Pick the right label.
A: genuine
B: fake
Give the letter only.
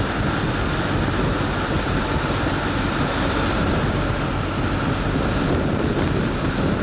A